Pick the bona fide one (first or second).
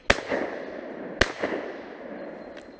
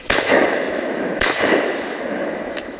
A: first